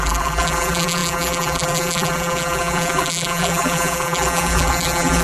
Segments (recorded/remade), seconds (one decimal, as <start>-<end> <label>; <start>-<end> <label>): 0.0-5.2 remade